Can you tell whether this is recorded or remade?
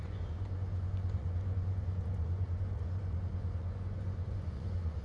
remade